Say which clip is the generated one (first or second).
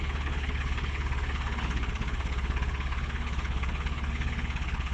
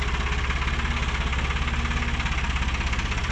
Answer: first